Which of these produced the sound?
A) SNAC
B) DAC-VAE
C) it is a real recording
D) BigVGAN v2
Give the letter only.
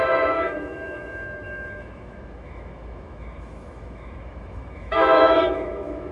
B